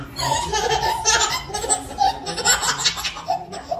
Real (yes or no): yes